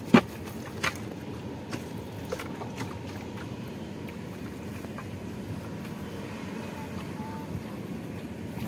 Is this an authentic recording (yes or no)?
yes